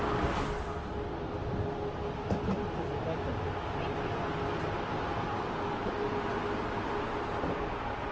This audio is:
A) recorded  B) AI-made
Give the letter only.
A